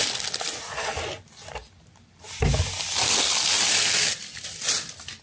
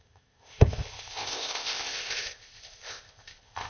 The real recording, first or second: first